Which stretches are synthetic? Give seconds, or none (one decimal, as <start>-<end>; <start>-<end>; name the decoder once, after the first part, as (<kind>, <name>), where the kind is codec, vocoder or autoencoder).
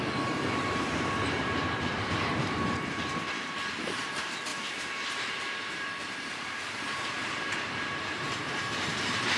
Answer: 0.0-9.4 (vocoder, BigVGAN v2)